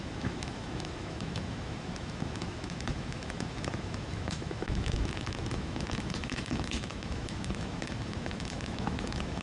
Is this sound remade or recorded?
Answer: remade